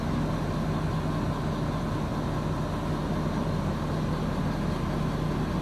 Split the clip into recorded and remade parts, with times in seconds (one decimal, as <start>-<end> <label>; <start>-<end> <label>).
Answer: 0.0-5.6 recorded